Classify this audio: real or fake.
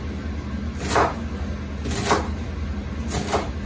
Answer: real